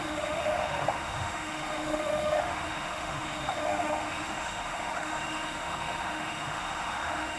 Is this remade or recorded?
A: remade